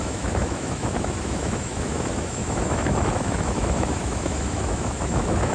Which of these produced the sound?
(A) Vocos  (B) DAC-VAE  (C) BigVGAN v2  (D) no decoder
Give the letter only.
B